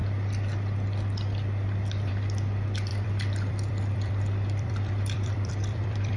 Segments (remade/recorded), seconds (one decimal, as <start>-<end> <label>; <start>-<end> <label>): 0.0-2.9 recorded; 2.9-6.2 remade